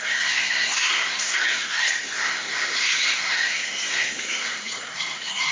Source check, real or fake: fake